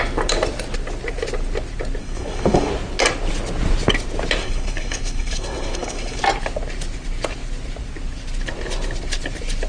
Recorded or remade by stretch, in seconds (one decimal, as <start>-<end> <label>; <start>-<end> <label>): 0.0-2.0 recorded; 2.0-2.7 remade; 2.7-4.4 recorded; 4.4-6.2 remade; 6.2-9.7 recorded

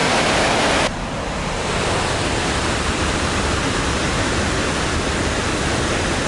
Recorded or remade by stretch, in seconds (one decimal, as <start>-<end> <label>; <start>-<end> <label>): 0.0-3.8 remade; 3.8-6.3 recorded